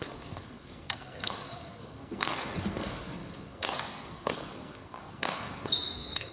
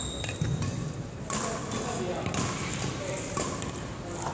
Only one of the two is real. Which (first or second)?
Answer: second